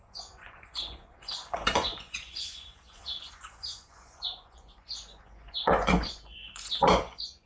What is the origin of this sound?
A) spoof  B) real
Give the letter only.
A